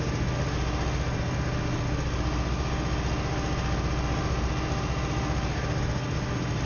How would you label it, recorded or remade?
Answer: recorded